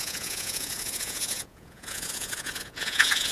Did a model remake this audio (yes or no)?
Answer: yes